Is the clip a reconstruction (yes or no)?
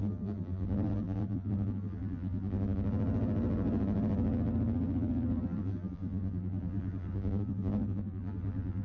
yes